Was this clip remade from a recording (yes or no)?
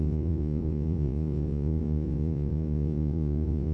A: yes